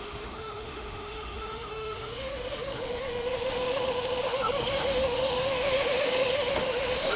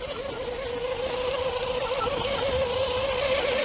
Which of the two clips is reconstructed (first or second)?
first